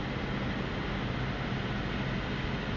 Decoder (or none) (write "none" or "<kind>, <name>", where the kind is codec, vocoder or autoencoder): none